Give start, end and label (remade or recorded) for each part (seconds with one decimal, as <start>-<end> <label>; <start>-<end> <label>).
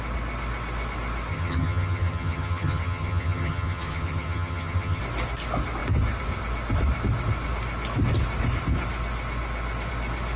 0.0-1.3 recorded; 1.3-5.0 remade; 5.0-10.4 recorded